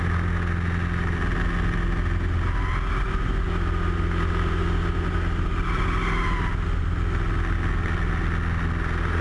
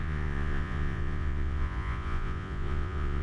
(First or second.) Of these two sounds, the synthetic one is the second